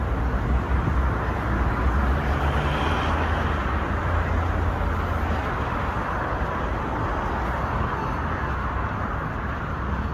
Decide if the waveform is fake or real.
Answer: real